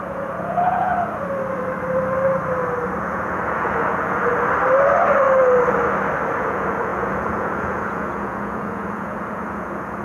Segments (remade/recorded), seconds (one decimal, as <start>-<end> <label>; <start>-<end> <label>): 0.0-0.9 remade; 0.9-3.0 recorded; 3.0-4.3 remade; 4.3-6.4 recorded; 6.4-10.0 remade